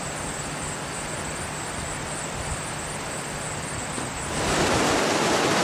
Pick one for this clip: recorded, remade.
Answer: recorded